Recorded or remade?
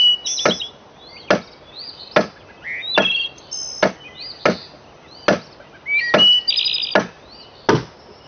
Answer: recorded